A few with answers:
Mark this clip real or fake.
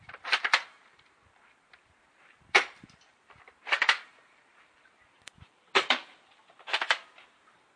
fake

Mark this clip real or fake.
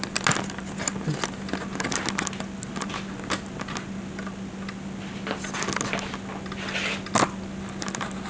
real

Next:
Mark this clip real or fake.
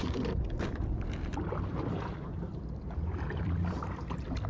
fake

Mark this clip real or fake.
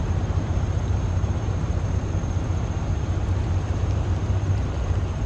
fake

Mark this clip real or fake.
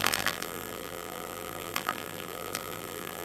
fake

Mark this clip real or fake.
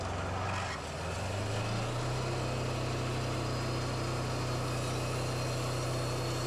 real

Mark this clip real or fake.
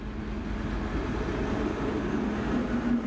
real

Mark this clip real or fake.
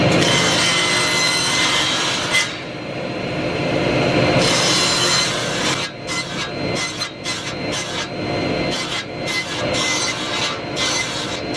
real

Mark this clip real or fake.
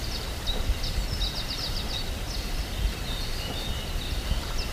real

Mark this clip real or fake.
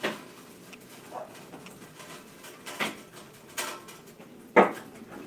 real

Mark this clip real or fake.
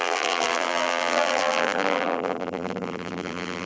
fake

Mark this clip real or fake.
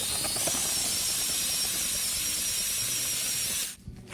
real